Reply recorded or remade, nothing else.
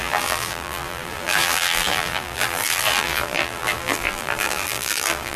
remade